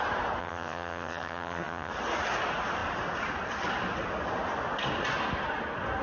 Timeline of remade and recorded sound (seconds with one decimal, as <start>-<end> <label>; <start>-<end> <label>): 0.0-0.4 recorded; 0.4-1.9 remade; 1.9-6.0 recorded